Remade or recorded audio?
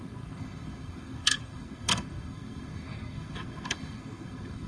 remade